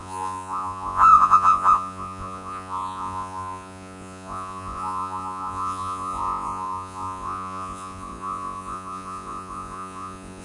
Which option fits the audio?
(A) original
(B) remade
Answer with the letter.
B